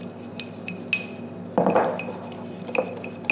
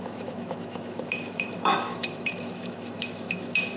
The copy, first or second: second